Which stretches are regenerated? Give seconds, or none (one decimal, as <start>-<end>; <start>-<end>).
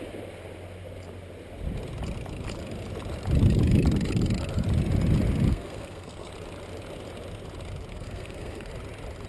5.5-6.3; 7.9-8.7